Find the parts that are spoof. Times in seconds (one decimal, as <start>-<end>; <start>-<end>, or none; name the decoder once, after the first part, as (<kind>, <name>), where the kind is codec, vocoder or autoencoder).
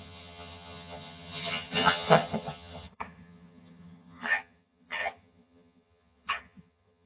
0.0-7.1 (vocoder, HiFi-GAN)